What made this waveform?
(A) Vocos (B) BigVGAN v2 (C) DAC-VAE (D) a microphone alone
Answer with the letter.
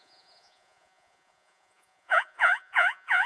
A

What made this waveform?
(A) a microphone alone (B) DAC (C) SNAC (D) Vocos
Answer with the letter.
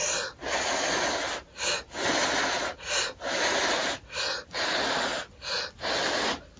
A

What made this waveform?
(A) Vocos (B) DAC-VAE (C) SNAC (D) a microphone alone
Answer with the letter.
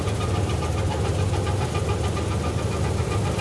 D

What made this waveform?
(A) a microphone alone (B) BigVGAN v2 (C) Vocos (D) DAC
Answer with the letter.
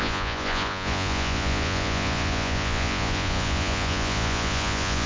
C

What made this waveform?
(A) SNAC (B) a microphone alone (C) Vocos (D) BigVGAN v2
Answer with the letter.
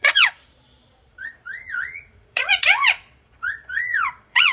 C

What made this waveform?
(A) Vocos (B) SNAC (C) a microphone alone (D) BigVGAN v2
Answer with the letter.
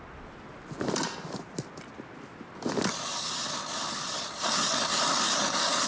C